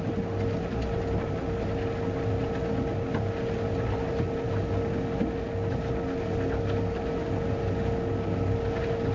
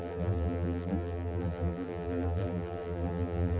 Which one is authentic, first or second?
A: first